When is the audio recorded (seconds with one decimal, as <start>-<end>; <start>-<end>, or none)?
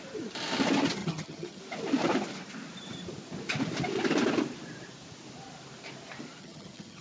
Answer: 0.0-1.0; 1.6-6.4